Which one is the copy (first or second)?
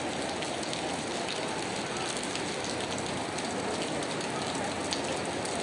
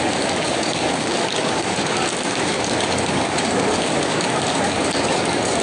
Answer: second